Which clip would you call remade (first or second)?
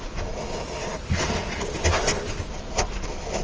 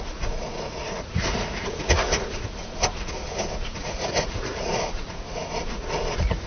second